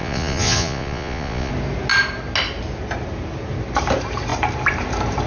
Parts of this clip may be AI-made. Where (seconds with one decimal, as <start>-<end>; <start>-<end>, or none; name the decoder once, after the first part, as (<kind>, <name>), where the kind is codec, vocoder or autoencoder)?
0.0-1.5 (vocoder, Vocos)